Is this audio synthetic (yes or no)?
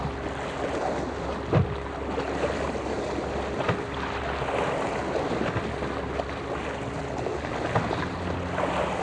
no